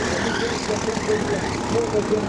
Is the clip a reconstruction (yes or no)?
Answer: no